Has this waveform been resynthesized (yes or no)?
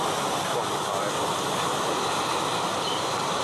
no